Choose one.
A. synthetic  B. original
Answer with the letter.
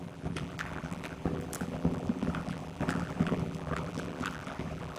A